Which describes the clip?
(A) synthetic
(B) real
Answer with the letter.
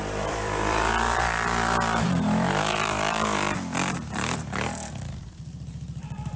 A